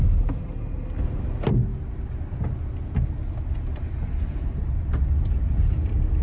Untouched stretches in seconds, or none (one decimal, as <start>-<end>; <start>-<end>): 0.0-6.2